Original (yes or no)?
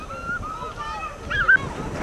yes